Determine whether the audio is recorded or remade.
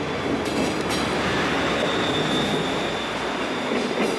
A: recorded